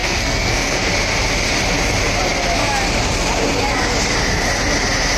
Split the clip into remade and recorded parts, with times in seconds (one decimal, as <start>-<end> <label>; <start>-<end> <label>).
0.0-0.9 remade; 0.9-5.2 recorded